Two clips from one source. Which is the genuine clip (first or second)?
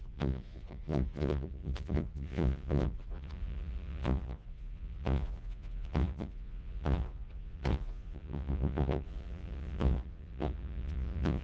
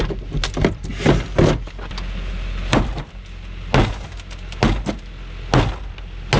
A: second